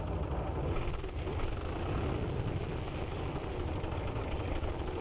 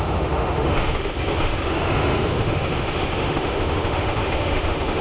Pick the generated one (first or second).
second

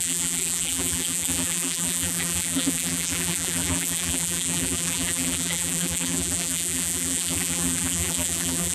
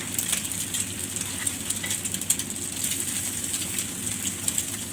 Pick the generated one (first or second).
first